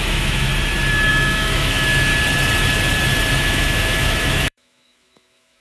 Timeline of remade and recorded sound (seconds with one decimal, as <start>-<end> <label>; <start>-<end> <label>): 0.0-0.5 remade; 0.5-1.1 recorded; 1.1-2.1 remade; 2.1-3.3 recorded; 3.3-5.6 remade